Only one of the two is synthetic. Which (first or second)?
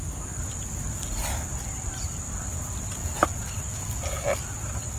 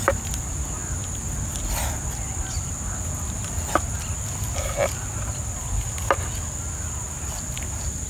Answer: first